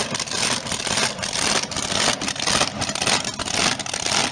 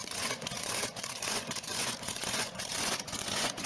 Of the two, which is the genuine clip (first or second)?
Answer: first